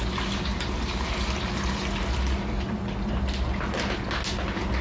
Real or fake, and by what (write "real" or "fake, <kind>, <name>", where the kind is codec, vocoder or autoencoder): real